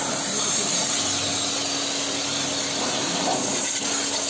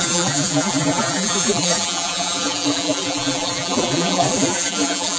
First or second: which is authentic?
first